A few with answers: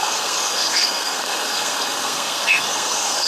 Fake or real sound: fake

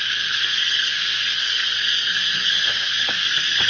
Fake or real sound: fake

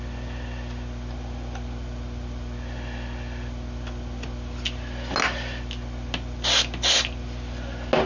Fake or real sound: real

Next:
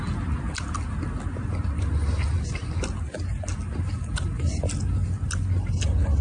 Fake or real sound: real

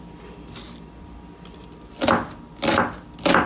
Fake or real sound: real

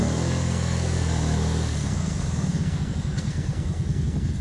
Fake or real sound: fake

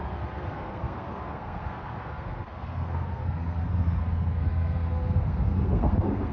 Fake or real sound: fake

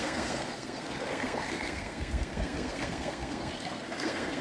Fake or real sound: fake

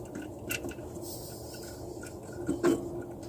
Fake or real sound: real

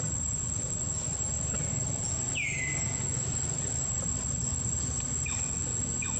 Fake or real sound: real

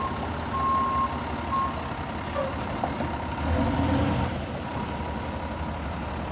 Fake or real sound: real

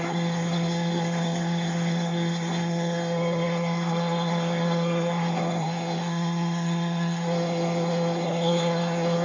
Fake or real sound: fake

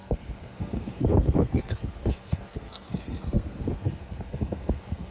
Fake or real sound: fake